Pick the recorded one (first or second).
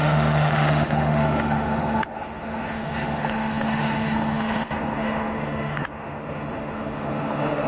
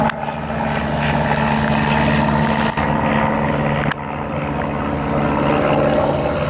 second